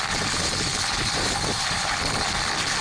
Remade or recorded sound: recorded